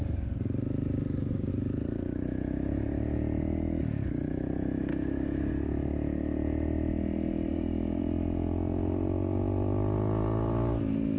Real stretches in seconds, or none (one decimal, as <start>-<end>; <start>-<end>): 0.0-4.9; 5.5-7.5; 8.0-11.2